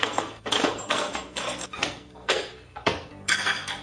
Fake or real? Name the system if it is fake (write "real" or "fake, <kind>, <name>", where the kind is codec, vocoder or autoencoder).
fake, codec, SNAC